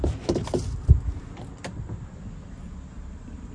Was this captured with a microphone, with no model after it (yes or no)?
yes